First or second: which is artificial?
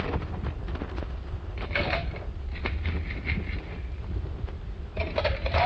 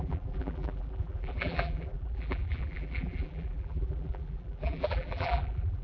second